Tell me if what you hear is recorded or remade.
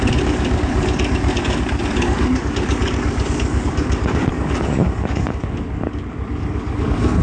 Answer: remade